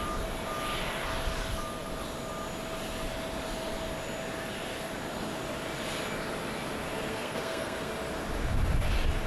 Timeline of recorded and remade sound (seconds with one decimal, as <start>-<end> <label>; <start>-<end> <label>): 0.0-7.1 recorded; 7.1-7.9 remade; 7.9-9.3 recorded